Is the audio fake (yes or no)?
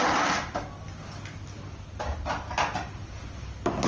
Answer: no